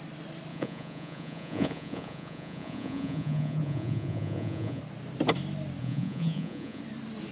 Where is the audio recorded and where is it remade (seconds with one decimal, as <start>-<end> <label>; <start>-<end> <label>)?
0.0-0.5 recorded; 0.5-4.8 remade; 4.8-5.8 recorded; 5.8-6.8 remade; 6.8-7.3 recorded